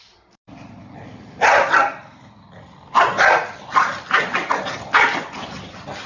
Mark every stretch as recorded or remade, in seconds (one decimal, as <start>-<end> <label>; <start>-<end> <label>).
0.0-3.7 remade; 3.7-6.1 recorded